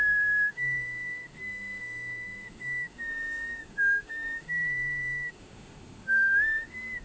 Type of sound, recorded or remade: remade